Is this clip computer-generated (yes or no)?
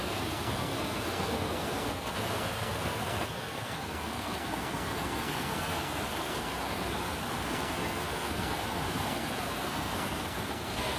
yes